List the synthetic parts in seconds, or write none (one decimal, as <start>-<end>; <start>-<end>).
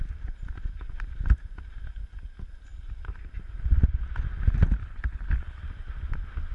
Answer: 4.8-5.6